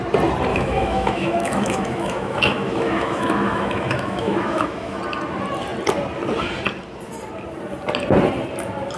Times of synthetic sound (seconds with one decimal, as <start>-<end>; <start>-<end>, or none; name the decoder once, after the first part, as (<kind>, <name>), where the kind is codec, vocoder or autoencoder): 0.5-5.0 (autoencoder, DAC-VAE)